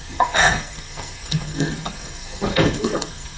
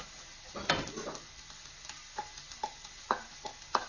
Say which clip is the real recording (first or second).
second